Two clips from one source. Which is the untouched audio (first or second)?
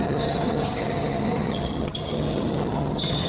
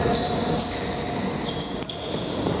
second